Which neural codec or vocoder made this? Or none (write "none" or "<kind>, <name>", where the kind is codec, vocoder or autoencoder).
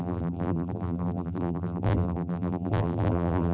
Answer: vocoder, BigVGAN v2